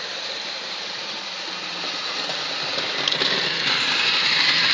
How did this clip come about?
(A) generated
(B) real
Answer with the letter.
A